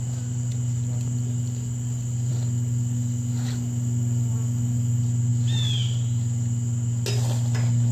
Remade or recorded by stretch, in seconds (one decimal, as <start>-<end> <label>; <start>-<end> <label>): 0.0-2.3 remade; 2.3-4.3 recorded; 4.3-5.3 remade; 5.3-7.1 recorded; 7.1-7.9 remade